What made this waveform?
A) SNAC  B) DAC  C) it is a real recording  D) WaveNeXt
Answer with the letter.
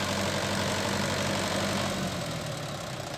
C